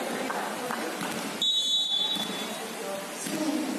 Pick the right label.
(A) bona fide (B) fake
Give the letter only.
A